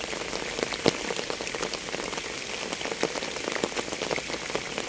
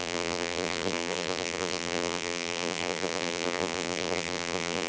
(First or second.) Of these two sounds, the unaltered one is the first